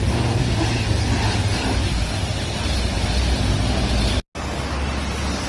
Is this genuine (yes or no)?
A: yes